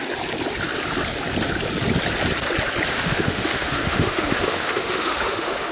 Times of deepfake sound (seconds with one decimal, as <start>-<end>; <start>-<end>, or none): 2.9-5.7